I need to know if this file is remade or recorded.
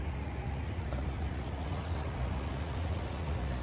remade